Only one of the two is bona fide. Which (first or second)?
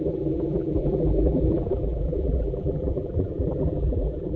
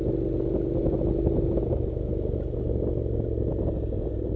second